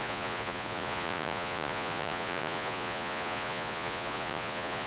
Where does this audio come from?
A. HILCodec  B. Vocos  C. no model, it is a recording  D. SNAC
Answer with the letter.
B